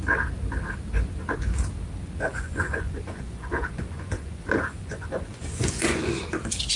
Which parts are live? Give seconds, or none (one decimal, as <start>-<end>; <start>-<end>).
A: 0.0-2.3; 6.2-6.8